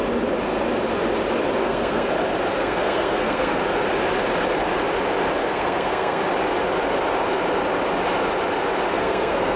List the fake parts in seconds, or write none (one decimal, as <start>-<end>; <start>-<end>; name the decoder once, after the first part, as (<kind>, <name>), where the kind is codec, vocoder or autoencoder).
1.6-2.1 (codec, SNAC); 2.6-3.6; 5.4-6.3; 8.9-9.6